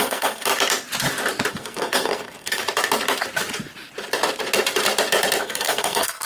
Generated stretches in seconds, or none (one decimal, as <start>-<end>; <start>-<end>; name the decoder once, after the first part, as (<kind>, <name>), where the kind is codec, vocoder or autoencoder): 0.0-0.5 (codec, SNAC); 1.5-2.6; 5.4-6.3